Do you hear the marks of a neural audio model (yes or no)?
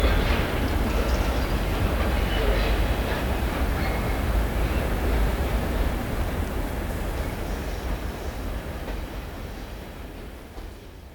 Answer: no